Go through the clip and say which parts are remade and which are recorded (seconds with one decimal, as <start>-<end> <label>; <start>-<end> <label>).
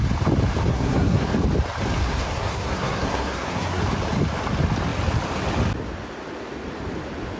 0.0-0.7 recorded; 0.7-1.3 remade; 1.3-2.0 recorded; 2.0-3.8 remade; 3.8-7.4 recorded